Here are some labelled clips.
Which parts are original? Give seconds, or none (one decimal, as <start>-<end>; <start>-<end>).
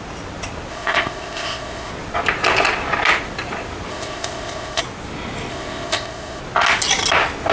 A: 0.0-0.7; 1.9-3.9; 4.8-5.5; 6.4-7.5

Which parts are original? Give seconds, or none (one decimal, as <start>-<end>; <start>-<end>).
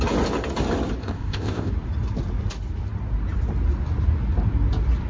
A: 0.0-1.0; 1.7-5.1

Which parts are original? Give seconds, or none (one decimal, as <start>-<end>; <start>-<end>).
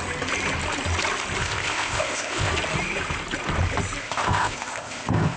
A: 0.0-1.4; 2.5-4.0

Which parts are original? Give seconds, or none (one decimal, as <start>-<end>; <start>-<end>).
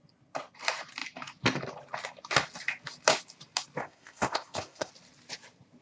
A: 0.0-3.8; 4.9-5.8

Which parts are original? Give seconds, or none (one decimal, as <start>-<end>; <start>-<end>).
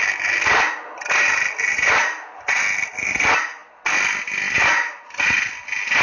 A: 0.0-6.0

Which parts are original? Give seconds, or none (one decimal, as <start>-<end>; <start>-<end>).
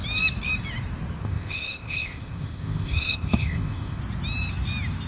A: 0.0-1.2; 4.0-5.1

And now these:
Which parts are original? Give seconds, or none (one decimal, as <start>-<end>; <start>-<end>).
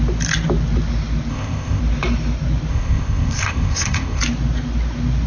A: 0.0-1.3; 1.8-2.7; 4.2-5.3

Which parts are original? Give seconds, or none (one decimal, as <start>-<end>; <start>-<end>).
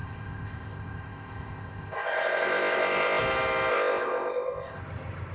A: 3.2-3.7; 4.8-5.3